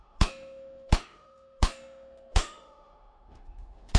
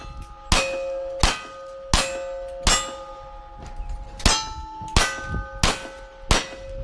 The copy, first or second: first